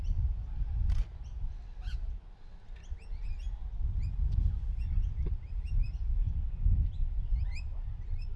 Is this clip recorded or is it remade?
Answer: recorded